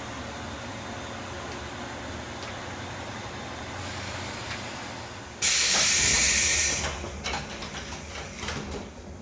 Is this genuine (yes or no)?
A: yes